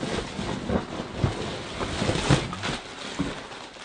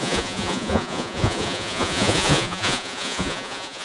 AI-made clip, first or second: second